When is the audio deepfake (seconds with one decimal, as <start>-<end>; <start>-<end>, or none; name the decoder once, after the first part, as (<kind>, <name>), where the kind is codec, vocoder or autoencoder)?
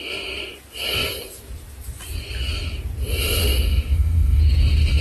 3.4-4.4 (autoencoder, DAC-VAE)